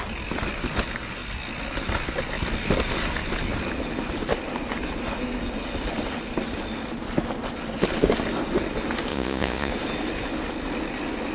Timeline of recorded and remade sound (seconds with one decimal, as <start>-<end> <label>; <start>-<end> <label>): 0.0-9.1 recorded; 9.1-9.7 remade; 9.7-11.3 recorded